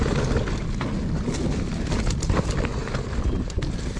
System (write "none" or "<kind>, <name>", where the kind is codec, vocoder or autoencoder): none